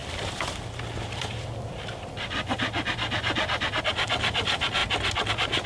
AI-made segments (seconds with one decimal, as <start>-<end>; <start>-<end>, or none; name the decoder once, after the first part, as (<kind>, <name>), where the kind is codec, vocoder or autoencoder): 0.0-4.8 (vocoder, BigVGAN v2); 5.3-5.7